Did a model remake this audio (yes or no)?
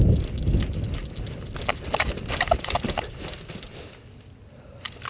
no